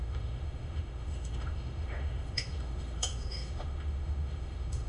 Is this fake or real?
fake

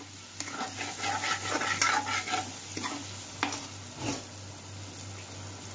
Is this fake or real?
real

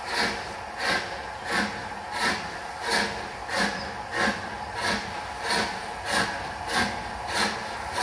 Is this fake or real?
real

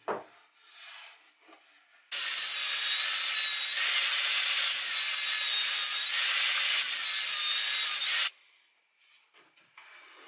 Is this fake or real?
real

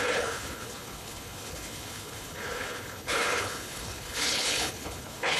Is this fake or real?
fake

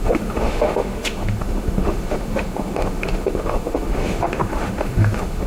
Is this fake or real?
fake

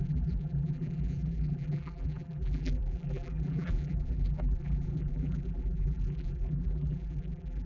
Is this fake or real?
fake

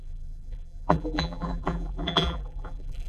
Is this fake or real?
fake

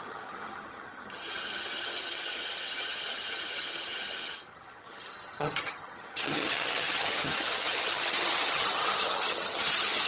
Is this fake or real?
fake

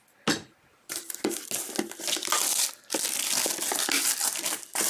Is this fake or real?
real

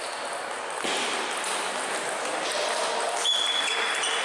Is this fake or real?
real